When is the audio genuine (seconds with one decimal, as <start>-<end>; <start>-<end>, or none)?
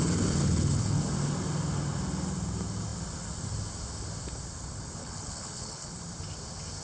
0.0-0.4; 1.0-5.0; 5.9-6.8